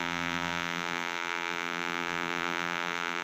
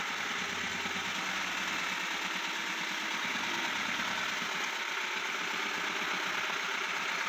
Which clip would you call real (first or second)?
second